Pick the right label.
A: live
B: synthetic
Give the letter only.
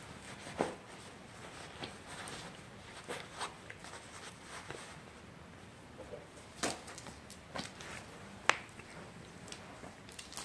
A